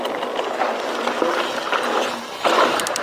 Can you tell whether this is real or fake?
real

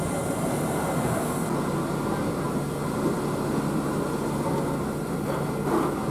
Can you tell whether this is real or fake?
real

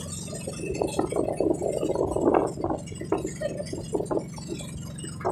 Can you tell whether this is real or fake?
real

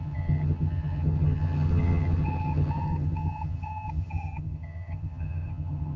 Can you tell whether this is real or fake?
fake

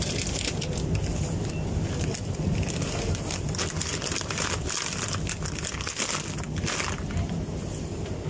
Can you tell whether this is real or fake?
real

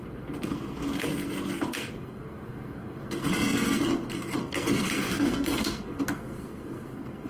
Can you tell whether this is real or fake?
fake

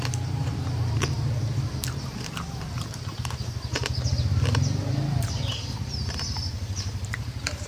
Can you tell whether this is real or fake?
fake